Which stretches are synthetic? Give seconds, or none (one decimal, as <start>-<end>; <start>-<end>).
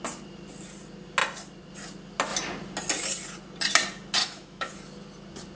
4.2-4.7